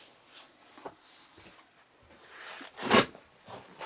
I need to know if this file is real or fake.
real